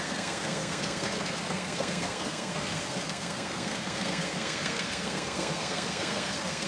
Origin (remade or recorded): remade